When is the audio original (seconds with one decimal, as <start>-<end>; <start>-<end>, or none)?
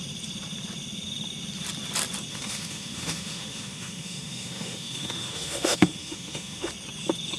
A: 0.0-2.3; 6.7-7.4